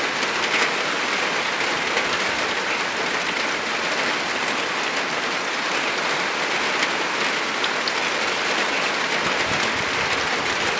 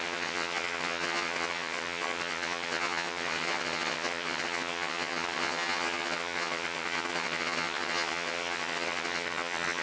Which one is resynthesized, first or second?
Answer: second